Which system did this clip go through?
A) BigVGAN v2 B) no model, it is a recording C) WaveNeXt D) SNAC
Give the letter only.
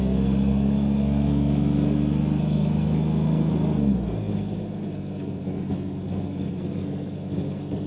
D